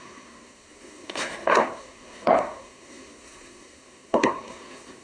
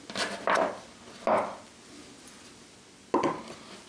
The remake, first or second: first